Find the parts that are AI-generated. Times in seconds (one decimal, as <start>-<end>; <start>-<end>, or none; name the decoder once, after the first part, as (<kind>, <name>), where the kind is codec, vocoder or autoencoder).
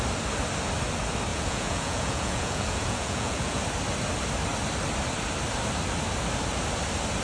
1.3-3.6 (vocoder, Vocos)